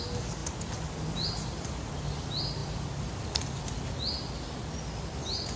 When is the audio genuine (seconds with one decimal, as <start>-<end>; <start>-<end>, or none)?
0.0-5.6